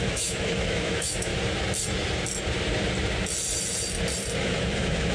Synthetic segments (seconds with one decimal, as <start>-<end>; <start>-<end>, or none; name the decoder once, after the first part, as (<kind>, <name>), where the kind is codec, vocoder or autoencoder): 0.0-1.3 (autoencoder, DAC-VAE); 4.4-5.1